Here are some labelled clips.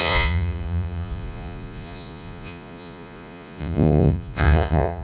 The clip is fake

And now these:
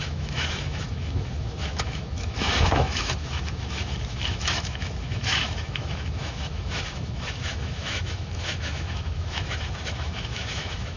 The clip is fake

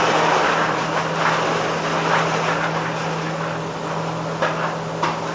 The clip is real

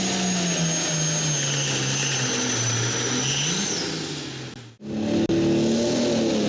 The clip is real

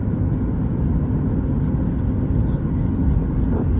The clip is real